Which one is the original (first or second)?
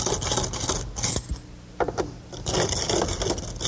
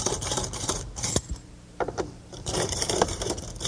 first